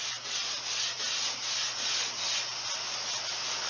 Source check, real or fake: real